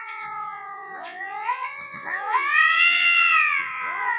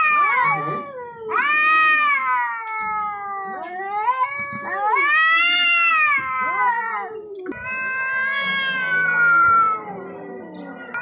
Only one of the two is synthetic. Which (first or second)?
first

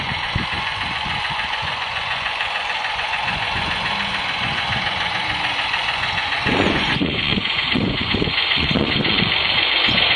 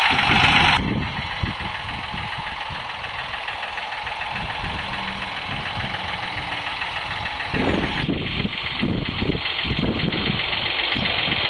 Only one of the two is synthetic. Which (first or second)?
first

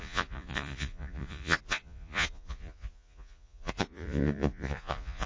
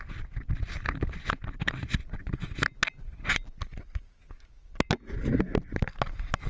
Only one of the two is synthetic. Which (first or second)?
first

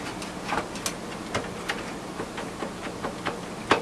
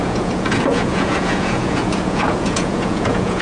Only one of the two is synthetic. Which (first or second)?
second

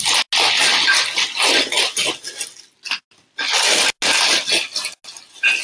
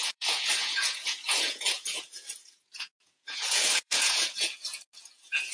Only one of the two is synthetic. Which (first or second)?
second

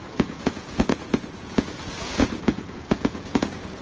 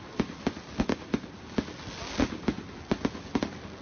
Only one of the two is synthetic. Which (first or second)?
first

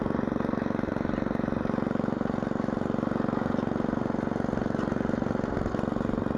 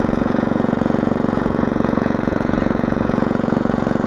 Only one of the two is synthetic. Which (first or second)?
second